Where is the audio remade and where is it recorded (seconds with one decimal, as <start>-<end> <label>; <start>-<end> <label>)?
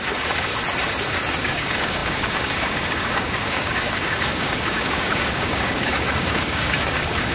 0.0-0.5 remade; 0.5-1.4 recorded; 1.4-7.3 remade